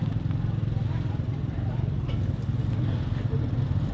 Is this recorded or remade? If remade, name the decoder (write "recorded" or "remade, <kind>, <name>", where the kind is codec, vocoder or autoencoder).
recorded